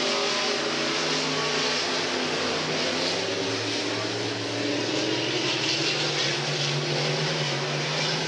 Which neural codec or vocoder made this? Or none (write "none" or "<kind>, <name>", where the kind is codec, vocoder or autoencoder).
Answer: none